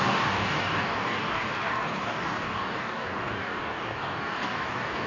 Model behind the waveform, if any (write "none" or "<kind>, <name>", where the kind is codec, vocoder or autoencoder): codec, DAC